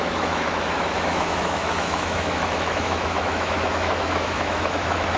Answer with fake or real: fake